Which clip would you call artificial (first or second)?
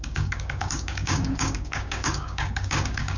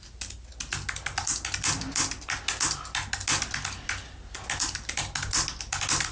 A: first